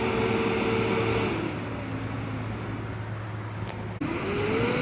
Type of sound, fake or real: real